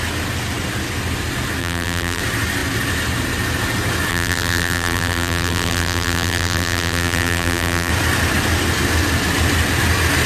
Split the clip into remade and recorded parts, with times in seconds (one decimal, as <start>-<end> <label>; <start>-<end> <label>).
0.0-1.6 recorded; 1.6-2.2 remade; 2.2-4.1 recorded; 4.1-7.9 remade; 7.9-10.3 recorded